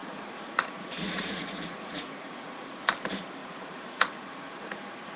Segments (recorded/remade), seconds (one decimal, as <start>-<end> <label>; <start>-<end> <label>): 0.0-2.8 remade; 2.8-3.4 recorded; 3.4-5.2 remade

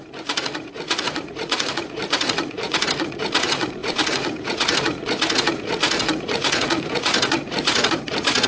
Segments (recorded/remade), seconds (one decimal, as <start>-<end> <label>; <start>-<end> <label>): 0.0-8.5 remade

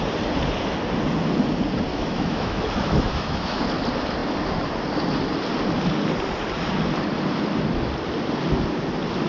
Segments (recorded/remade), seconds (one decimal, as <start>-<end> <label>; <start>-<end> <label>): 0.0-1.9 recorded; 1.9-3.6 remade; 3.6-9.3 recorded

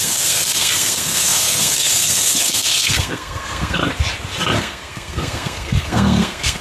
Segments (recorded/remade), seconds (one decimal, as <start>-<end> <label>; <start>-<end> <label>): 0.0-3.8 remade; 3.8-4.6 recorded; 4.6-6.6 remade

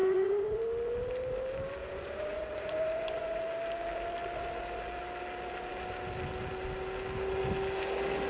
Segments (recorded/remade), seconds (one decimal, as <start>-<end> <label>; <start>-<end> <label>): 0.0-0.6 remade; 0.6-1.8 recorded; 1.8-3.4 remade; 3.4-8.3 recorded

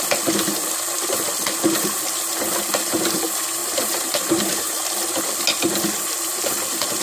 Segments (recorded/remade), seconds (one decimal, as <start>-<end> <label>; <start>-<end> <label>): 0.0-3.6 recorded; 3.6-5.2 remade; 5.2-7.0 recorded